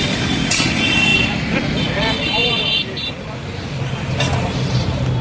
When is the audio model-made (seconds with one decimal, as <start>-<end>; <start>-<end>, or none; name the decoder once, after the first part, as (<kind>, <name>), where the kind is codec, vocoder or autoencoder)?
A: 1.1-1.6 (vocoder, BigVGAN v2)

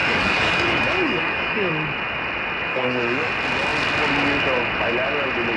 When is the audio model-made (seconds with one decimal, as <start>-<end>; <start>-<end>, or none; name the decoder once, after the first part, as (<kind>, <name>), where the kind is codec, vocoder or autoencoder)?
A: 0.0-1.7 (codec, DAC); 2.7-3.3

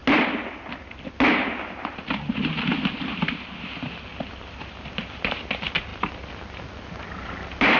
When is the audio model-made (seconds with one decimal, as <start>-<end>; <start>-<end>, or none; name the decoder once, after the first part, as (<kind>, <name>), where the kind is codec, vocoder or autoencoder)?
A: none

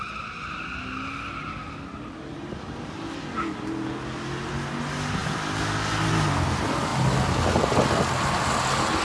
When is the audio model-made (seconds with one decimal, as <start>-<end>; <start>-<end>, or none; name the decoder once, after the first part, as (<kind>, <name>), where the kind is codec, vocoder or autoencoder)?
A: none

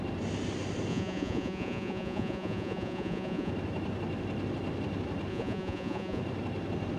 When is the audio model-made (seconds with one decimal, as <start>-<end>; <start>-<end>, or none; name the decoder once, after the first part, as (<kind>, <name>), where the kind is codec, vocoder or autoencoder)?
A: 0.9-3.5 (vocoder, Vocos); 5.3-6.2

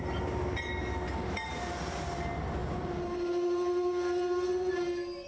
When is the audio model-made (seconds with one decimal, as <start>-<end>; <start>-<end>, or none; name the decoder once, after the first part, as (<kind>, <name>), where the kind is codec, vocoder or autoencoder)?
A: none

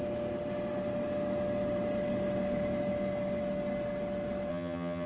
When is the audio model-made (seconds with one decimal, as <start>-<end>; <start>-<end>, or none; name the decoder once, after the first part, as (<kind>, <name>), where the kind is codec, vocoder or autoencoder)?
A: 4.5-5.1 (vocoder, HiFi-GAN)